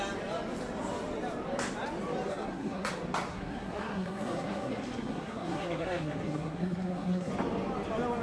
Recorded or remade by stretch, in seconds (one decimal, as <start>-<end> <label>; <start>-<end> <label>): 0.0-2.3 recorded; 2.3-2.9 remade; 2.9-3.3 recorded; 3.3-7.3 remade; 7.3-8.2 recorded